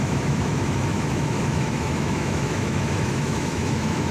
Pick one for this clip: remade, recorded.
remade